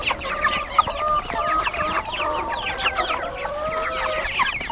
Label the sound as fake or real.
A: real